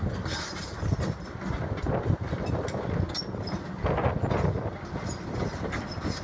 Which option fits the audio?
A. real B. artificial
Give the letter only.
A